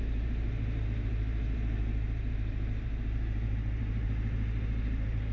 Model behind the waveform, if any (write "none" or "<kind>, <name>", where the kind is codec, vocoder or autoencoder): vocoder, BigVGAN v2